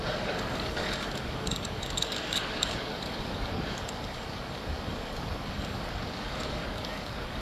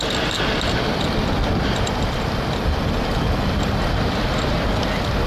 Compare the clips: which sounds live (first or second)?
second